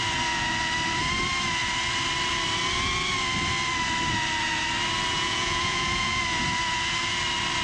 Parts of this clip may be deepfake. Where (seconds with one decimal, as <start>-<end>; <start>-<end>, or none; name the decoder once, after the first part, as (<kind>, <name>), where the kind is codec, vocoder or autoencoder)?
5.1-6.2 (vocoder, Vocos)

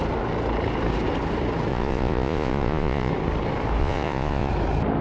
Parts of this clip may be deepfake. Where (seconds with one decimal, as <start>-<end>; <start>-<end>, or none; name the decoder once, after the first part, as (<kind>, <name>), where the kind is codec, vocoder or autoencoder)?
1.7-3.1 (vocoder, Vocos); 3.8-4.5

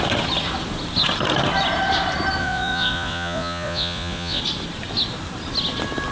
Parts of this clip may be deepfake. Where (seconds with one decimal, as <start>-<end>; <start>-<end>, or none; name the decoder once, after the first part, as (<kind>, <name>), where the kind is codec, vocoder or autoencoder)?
2.4-4.4 (vocoder, Vocos)

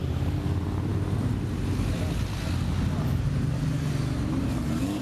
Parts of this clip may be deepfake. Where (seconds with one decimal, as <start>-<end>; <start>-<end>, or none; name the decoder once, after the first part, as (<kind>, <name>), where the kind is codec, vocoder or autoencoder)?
none

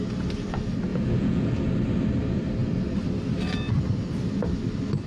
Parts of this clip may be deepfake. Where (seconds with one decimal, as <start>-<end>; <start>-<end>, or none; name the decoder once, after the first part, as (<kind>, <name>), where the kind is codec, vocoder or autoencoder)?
0.9-1.6 (vocoder, Vocos)

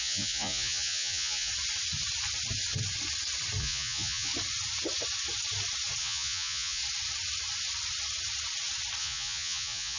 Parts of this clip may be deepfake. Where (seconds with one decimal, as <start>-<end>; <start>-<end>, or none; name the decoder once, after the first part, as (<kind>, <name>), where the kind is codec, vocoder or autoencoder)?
0.0-1.5 (vocoder, Vocos); 3.6-4.3; 6.0-6.8; 9.0-10.0

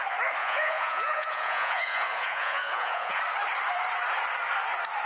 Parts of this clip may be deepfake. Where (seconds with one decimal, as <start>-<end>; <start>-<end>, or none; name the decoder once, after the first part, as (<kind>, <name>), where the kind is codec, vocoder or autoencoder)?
0.4-3.2 (vocoder, Vocos)

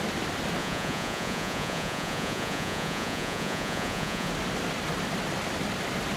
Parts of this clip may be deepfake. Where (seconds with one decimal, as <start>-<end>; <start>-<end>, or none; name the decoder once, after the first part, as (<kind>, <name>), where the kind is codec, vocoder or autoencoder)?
0.6-4.3 (vocoder, Vocos)